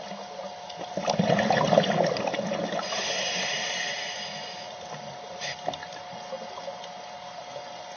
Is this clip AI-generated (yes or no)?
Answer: no